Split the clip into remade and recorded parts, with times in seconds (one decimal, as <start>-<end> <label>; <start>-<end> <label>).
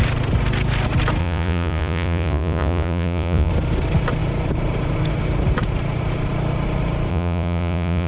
0.0-1.2 recorded; 1.2-3.5 remade; 3.5-7.1 recorded; 7.1-8.1 remade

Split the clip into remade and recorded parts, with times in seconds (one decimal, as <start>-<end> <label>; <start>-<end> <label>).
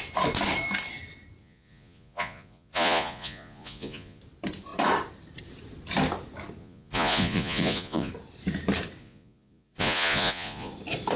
0.0-1.4 recorded; 1.4-4.2 remade; 4.2-6.6 recorded; 6.6-8.1 remade; 8.1-9.0 recorded; 9.0-10.7 remade; 10.7-11.2 recorded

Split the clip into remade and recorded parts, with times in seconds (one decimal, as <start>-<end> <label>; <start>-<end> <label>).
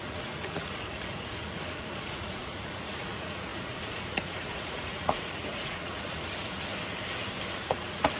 0.0-6.7 remade; 6.7-7.5 recorded; 7.5-8.2 remade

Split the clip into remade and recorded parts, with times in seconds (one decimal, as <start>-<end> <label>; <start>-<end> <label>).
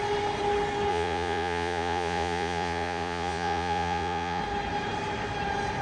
0.0-0.9 recorded; 0.9-4.4 remade; 4.4-5.8 recorded